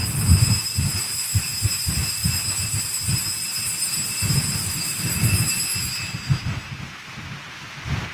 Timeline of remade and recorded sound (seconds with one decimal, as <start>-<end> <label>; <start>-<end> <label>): 0.0-4.6 recorded; 4.6-5.5 remade; 5.5-8.1 recorded